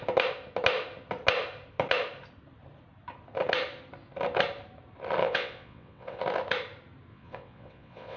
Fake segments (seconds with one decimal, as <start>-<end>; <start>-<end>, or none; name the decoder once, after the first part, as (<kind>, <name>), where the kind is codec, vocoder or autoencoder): 5.2-6.2 (vocoder, WaveNeXt); 7.1-8.2

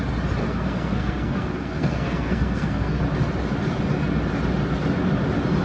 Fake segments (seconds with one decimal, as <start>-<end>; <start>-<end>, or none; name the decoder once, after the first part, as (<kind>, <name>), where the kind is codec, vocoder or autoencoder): 0.4-3.0 (codec, SNAC)

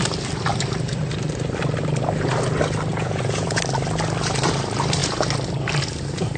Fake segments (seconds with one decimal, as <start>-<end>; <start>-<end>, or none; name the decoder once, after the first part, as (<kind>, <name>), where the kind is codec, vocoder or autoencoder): 2.9-3.6 (vocoder, Vocos)

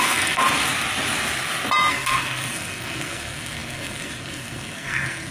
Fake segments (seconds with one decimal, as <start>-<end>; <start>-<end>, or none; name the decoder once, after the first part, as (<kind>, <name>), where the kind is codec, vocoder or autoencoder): 0.0-0.4 (codec, SNAC); 1.9-5.3